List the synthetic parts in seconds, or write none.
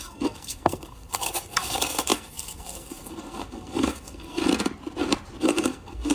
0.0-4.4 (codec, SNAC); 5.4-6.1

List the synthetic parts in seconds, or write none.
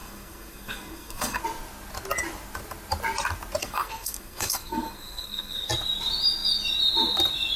0.0-1.4 (codec, SNAC); 3.6-5.7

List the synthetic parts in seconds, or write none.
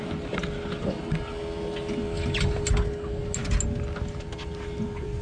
none